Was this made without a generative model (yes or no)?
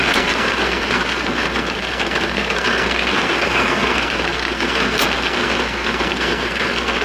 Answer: no